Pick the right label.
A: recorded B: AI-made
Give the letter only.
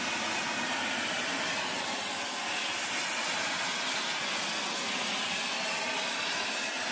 A